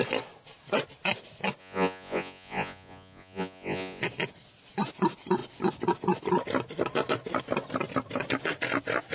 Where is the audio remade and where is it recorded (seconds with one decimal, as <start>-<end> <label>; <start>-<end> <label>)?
0.0-1.6 recorded; 1.6-4.0 remade; 4.0-9.1 recorded